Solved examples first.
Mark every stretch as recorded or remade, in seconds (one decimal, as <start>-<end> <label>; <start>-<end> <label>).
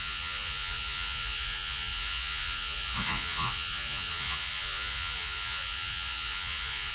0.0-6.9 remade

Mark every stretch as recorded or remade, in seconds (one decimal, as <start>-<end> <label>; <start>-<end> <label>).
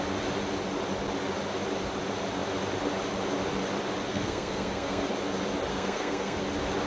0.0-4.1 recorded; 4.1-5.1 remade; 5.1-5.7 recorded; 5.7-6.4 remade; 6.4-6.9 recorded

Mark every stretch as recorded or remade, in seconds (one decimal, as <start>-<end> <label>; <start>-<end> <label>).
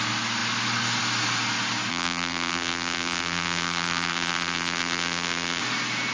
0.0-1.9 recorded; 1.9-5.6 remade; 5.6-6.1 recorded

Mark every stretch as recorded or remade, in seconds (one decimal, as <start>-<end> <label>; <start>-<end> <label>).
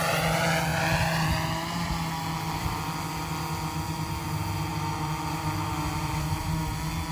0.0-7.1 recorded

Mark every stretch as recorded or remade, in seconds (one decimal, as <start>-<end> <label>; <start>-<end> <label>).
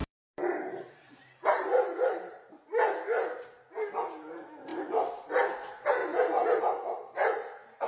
0.0-2.5 remade; 2.5-4.7 recorded; 4.7-5.4 remade; 5.4-7.9 recorded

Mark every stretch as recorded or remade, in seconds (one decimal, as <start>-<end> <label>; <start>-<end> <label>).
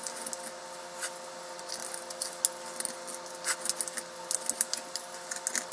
0.0-5.7 recorded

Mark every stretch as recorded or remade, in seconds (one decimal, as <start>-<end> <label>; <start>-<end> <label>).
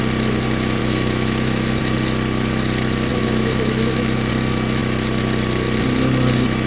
0.0-0.8 recorded; 0.8-1.8 remade; 1.8-3.1 recorded; 3.1-4.3 remade; 4.3-6.7 recorded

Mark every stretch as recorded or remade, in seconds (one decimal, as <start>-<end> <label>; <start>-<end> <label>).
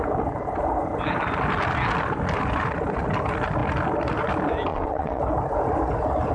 0.0-4.7 recorded; 4.7-5.2 remade; 5.2-6.3 recorded